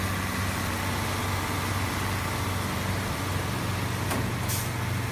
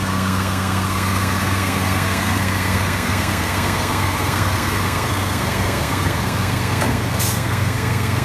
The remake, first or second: second